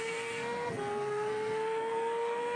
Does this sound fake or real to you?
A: fake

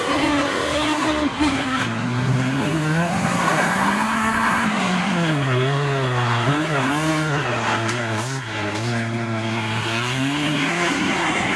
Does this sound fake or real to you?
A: fake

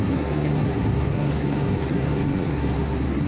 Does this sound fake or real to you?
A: fake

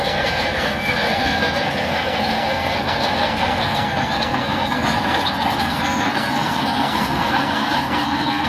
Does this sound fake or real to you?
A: fake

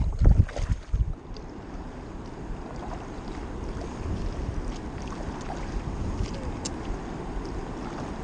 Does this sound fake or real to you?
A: real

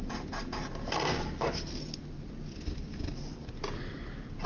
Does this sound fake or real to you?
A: real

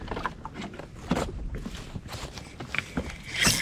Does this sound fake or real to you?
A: real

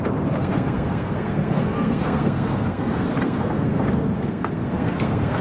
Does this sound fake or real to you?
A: fake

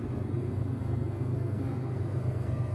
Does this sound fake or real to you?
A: fake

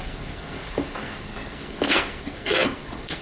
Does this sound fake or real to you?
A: fake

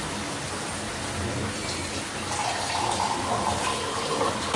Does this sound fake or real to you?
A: real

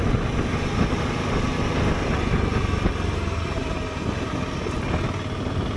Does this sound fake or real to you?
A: real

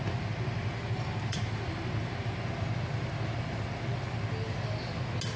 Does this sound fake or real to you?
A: real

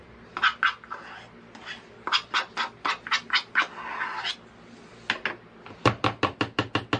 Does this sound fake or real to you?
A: real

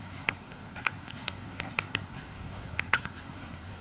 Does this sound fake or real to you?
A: fake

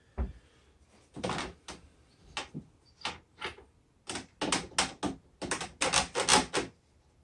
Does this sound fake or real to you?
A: real